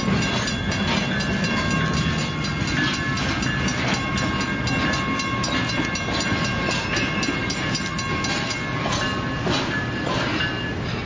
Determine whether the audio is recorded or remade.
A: recorded